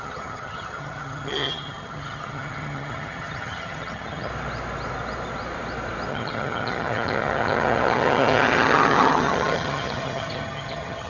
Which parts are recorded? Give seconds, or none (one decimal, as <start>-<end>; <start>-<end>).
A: 4.3-6.1